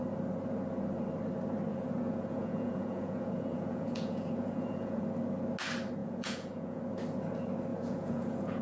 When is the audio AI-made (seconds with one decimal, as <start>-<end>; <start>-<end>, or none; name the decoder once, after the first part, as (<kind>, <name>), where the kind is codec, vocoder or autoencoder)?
1.7-5.0 (vocoder, Vocos); 6.0-6.8; 7.7-8.6

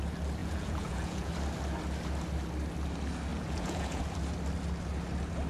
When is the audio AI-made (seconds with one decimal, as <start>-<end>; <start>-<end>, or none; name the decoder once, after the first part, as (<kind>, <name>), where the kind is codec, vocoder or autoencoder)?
0.4-1.3 (vocoder, Vocos); 3.3-4.0